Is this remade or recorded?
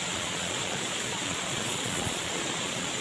remade